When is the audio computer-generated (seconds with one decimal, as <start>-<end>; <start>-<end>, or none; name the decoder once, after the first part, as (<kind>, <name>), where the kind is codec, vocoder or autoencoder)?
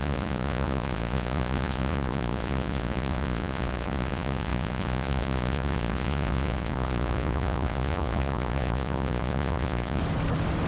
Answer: 0.0-10.0 (vocoder, Vocos)